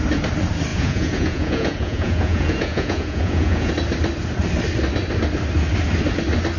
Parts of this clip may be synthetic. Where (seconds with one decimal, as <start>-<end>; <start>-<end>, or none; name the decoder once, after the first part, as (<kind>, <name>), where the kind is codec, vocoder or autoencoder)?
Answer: 0.7-3.7 (vocoder, Vocos)